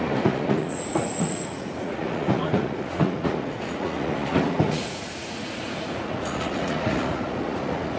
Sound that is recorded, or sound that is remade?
remade